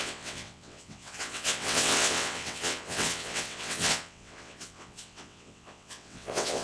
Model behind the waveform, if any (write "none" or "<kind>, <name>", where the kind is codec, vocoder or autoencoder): vocoder, WaveNeXt